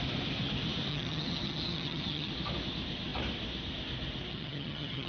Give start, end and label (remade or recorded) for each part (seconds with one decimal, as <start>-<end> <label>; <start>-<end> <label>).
0.0-0.9 recorded; 0.9-2.3 remade; 2.3-4.3 recorded; 4.3-5.1 remade